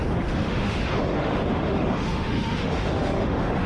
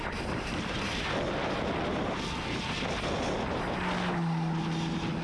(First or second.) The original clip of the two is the second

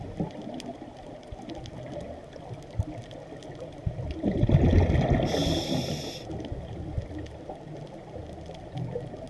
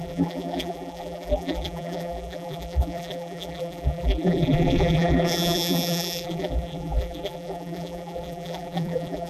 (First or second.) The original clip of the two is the first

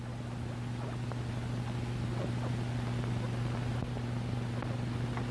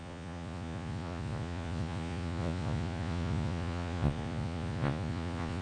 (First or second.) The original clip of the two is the first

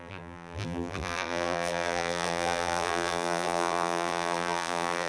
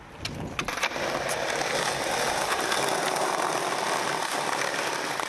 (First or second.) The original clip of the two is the second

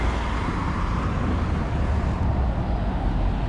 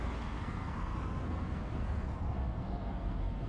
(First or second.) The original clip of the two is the first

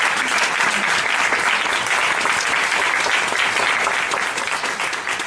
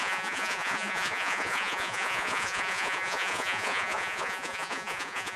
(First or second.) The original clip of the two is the first